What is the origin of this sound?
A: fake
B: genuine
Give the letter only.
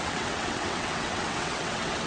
A